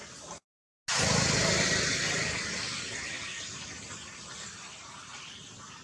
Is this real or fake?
real